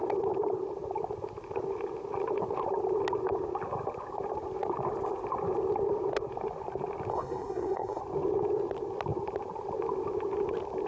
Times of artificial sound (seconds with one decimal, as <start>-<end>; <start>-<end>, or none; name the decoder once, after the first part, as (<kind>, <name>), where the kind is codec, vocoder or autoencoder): 7.1-8.0 (codec, SNAC)